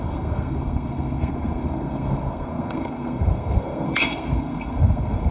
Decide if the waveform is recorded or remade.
remade